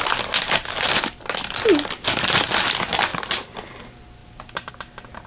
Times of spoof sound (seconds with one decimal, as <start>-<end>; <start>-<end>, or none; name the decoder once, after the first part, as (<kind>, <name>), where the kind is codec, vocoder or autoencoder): 3.1-3.8 (vocoder, BigVGAN v2); 4.2-4.7